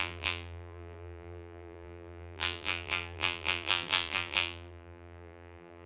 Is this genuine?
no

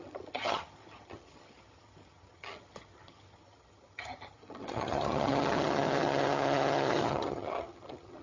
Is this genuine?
no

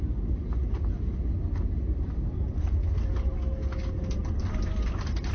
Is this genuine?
yes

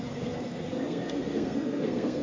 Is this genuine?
no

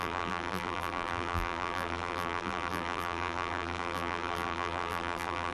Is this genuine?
no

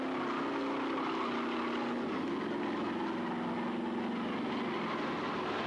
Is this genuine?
yes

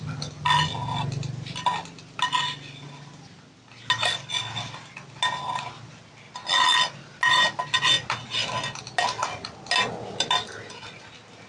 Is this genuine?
yes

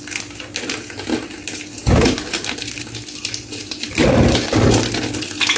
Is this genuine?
yes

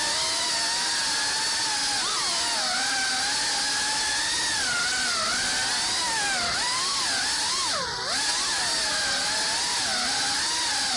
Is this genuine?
yes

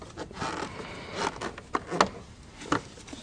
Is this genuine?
yes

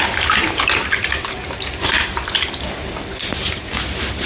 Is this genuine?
yes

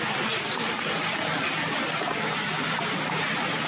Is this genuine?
yes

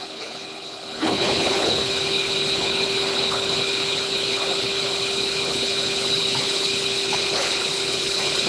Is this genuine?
no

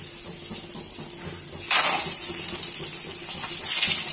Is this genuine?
yes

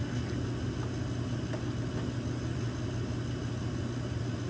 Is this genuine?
yes